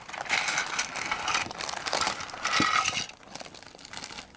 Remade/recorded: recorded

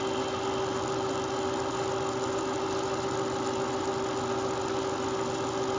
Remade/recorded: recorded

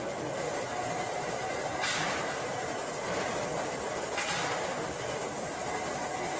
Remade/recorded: recorded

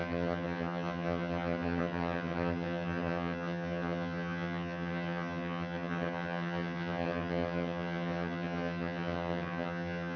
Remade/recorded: remade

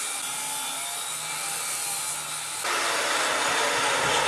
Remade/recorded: recorded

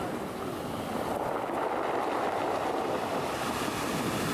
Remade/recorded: recorded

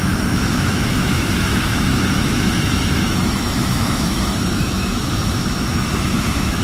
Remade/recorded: remade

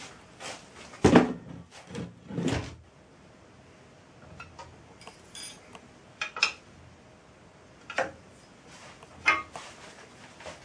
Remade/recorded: recorded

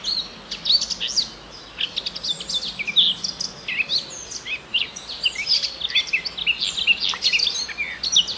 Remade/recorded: recorded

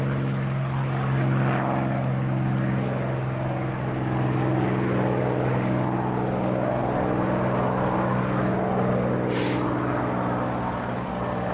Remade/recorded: recorded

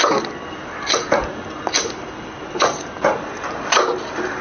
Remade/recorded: recorded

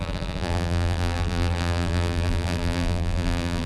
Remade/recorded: remade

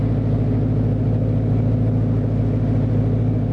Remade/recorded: recorded